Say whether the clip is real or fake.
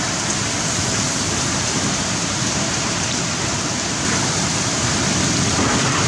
fake